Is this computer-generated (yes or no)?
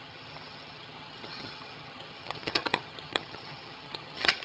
yes